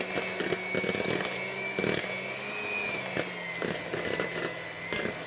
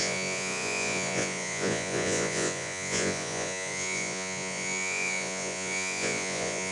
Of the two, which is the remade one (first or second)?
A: second